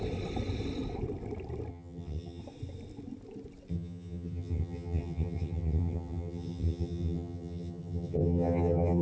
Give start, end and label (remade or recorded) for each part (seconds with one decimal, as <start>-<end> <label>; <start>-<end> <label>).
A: 0.0-1.7 recorded; 1.7-2.4 remade; 2.4-3.7 recorded; 3.7-9.0 remade